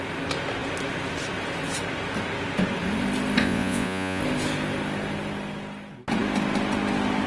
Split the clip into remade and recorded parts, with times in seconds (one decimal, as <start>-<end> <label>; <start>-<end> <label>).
0.0-3.4 recorded; 3.4-4.2 remade; 4.2-7.3 recorded